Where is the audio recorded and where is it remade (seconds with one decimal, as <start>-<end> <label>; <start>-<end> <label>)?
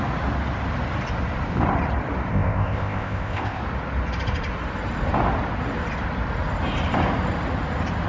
0.0-2.3 recorded; 2.3-3.6 remade; 3.6-8.1 recorded